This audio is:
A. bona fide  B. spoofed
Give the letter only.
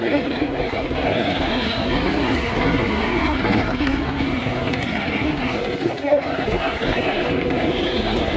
B